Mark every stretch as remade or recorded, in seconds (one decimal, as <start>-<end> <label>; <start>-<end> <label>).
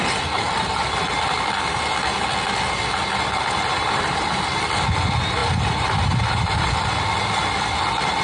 0.0-3.7 recorded; 3.7-4.6 remade; 4.6-5.4 recorded; 5.4-6.7 remade; 6.7-8.2 recorded